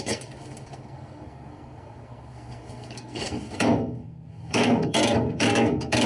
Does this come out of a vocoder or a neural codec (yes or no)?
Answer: yes